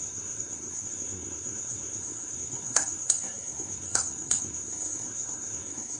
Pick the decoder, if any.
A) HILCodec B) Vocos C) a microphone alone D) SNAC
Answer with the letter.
D